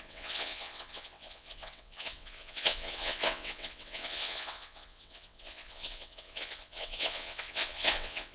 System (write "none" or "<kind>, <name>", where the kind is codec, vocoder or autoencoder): vocoder, WaveNeXt